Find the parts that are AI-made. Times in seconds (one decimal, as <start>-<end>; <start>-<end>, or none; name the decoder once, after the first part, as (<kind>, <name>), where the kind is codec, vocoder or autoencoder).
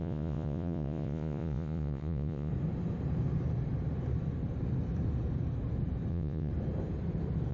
0.0-2.5 (vocoder, Vocos); 6.1-6.5